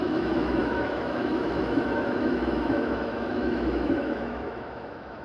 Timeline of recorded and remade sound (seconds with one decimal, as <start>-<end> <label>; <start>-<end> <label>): 0.0-5.2 remade